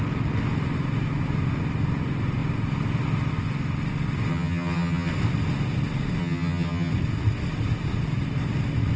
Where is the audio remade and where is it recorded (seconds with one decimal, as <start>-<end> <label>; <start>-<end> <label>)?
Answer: 0.0-4.3 recorded; 4.3-5.1 remade; 5.1-6.2 recorded; 6.2-6.9 remade; 6.9-9.0 recorded